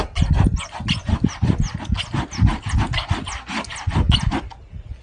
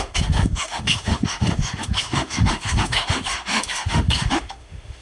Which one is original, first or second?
first